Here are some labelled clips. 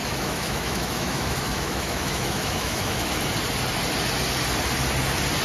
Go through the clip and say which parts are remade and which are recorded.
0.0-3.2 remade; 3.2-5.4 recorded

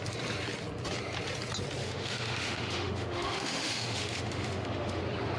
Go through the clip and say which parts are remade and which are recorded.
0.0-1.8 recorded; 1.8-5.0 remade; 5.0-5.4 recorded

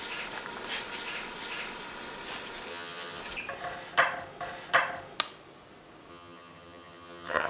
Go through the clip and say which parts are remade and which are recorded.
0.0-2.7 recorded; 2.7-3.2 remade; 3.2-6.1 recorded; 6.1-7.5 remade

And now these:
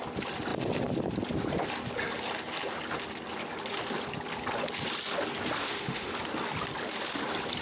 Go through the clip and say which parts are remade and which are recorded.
0.0-5.6 recorded; 5.6-6.1 remade; 6.1-7.6 recorded